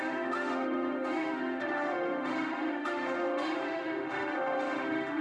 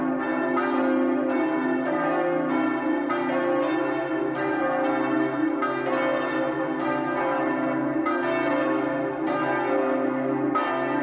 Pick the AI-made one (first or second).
first